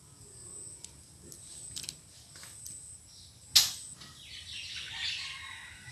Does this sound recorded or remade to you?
recorded